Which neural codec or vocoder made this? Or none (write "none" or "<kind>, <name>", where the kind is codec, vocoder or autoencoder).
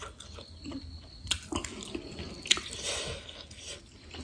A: none